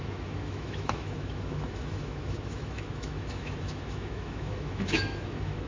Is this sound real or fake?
fake